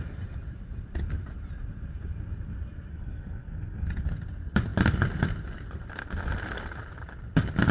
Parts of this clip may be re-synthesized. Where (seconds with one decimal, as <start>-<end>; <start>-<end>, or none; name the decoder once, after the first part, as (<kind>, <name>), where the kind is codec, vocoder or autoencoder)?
2.9-3.9 (codec, SNAC)